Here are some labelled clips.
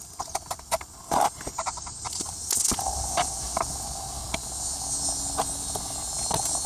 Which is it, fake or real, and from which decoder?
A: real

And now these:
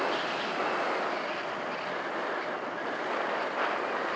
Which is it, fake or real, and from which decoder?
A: real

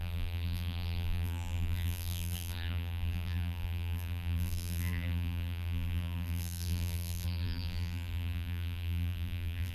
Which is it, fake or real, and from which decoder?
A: fake, vocoder, BigVGAN v2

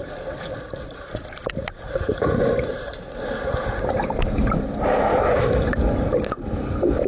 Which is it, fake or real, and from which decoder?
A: fake, vocoder, BigVGAN v2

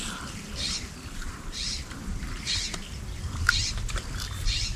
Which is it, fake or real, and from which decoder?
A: fake, vocoder, BigVGAN v2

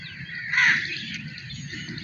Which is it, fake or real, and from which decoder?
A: real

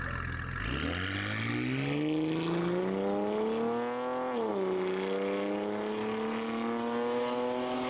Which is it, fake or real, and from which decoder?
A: real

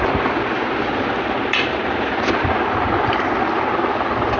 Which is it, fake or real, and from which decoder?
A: real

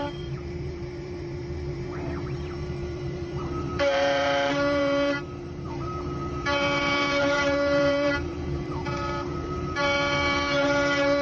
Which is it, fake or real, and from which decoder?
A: fake, vocoder, BigVGAN v2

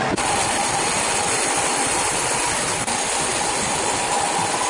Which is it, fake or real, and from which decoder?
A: real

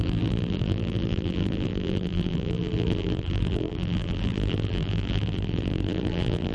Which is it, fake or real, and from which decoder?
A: fake, vocoder, BigVGAN v2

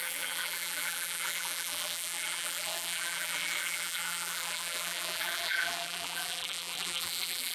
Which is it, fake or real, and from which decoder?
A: fake, vocoder, BigVGAN v2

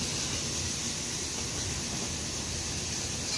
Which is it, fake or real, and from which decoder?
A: real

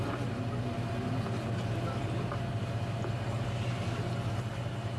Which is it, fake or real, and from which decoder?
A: fake, vocoder, BigVGAN v2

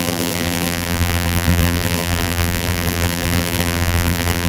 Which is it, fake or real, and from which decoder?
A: fake, vocoder, BigVGAN v2